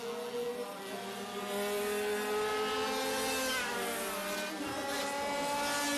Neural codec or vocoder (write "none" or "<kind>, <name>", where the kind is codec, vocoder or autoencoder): none